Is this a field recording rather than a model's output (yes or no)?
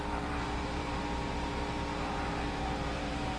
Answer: no